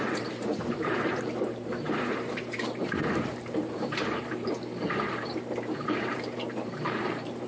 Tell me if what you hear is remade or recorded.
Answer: remade